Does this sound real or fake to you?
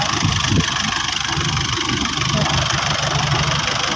real